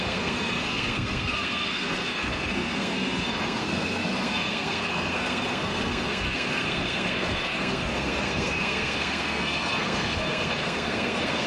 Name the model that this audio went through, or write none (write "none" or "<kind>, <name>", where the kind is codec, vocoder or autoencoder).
codec, SNAC